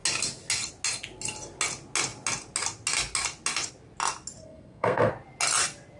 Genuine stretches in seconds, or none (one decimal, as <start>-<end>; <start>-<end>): 0.0-4.4; 5.1-6.0